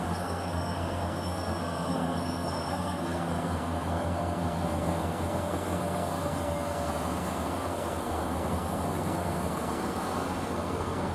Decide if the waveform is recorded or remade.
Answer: remade